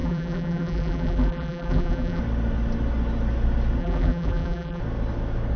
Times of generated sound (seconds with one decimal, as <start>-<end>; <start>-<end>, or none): 0.0-2.2; 3.8-4.8